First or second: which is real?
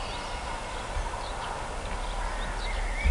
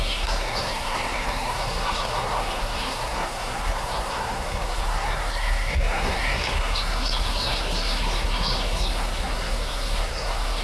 first